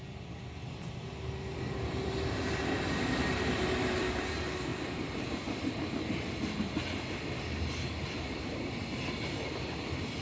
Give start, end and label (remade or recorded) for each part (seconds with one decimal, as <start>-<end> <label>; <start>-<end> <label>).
0.0-4.7 recorded; 4.7-5.7 remade; 5.7-10.2 recorded